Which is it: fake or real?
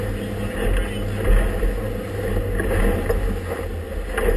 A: real